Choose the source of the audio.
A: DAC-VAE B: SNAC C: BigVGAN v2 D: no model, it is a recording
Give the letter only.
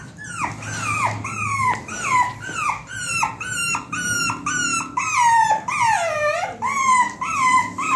D